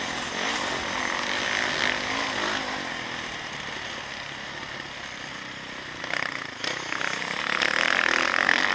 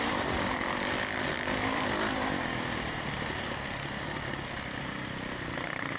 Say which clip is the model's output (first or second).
second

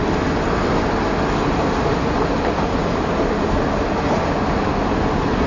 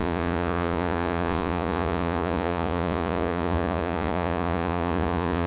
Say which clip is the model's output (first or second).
second